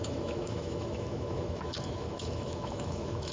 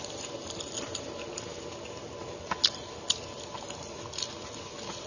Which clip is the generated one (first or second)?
first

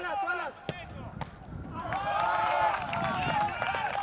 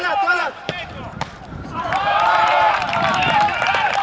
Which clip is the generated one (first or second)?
second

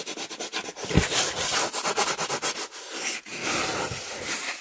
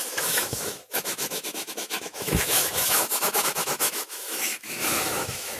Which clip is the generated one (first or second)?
second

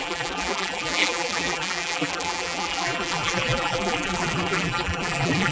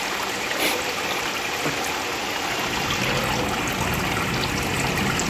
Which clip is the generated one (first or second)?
first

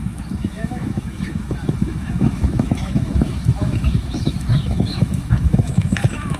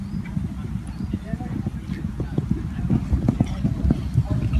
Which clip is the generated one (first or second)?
first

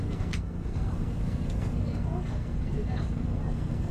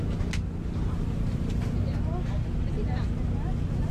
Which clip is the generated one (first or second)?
first